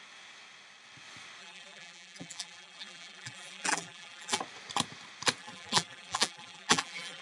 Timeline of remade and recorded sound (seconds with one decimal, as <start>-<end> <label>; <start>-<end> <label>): 0.0-1.4 recorded; 1.4-4.4 remade; 4.4-5.4 recorded; 5.4-7.2 remade